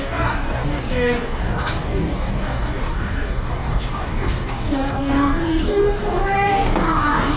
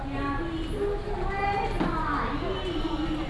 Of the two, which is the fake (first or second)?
first